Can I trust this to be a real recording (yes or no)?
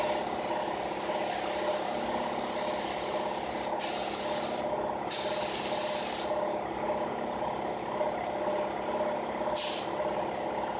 yes